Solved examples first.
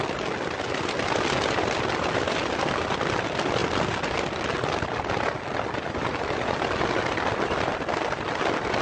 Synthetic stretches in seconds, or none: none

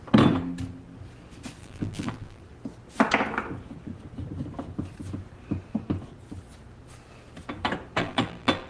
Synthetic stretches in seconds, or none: 1.6-2.4 (vocoder, BigVGAN v2); 8.0-8.7

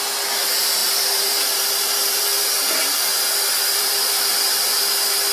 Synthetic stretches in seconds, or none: 0.8-3.0 (vocoder, BigVGAN v2); 3.7-4.8

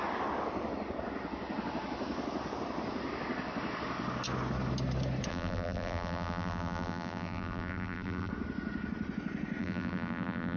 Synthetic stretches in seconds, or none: 5.3-8.3 (vocoder, BigVGAN v2); 9.6-10.6

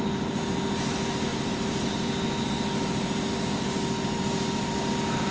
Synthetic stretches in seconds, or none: 1.3-1.9 (vocoder, BigVGAN v2)